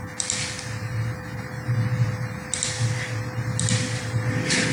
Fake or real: real